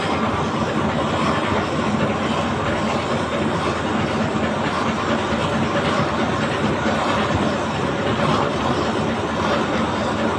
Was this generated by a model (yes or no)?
no